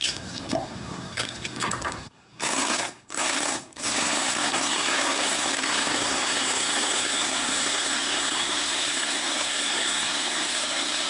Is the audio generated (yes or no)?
yes